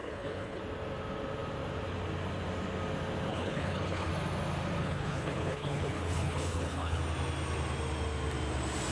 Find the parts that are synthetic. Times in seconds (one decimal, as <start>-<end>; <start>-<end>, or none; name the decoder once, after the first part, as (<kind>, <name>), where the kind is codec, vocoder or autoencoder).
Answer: 0.0-0.6 (codec, HILCodec); 3.3-4.1; 4.8-7.0